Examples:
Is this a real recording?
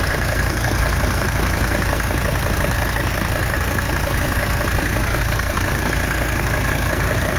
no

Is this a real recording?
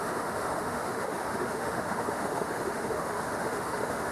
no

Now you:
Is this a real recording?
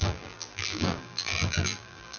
no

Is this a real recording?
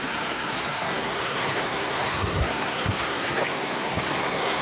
no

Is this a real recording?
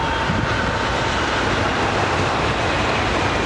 yes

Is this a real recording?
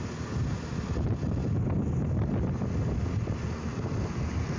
yes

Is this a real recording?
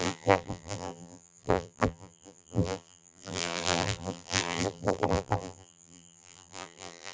no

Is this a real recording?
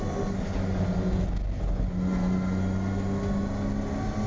yes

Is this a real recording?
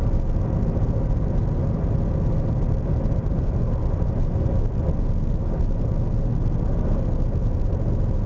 yes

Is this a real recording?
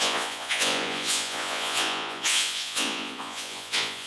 no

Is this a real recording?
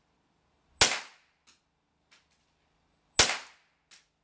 yes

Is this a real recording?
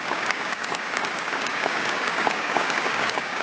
no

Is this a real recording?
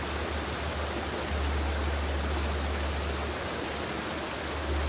yes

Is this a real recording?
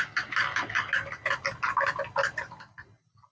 yes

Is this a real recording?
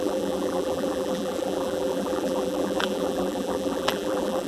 no